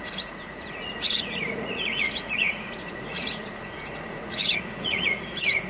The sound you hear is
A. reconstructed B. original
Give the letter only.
A